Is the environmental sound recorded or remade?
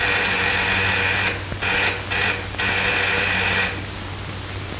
recorded